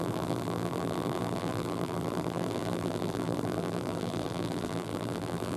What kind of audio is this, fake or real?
fake